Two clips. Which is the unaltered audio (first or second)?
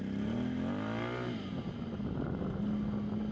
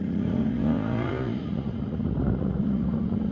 first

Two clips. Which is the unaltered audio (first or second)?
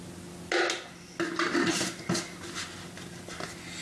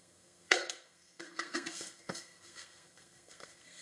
first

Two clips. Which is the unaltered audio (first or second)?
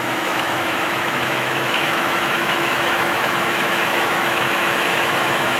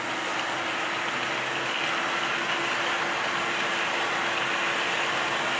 second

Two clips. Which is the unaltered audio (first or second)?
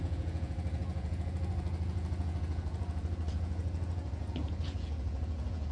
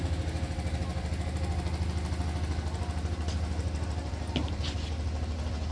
second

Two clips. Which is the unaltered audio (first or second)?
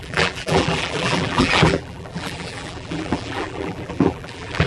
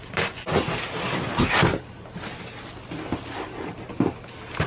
second